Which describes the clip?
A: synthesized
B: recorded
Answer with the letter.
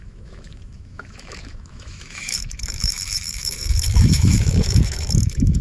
A